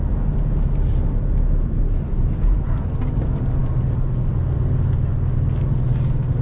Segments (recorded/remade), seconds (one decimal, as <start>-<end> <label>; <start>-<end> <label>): 0.0-6.4 recorded